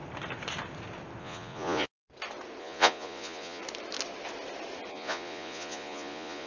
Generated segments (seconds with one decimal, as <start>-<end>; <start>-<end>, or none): 1.2-1.9; 2.6-3.6; 4.9-6.5